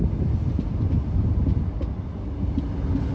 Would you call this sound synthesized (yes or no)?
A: no